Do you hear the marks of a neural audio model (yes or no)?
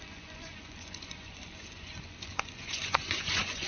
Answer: yes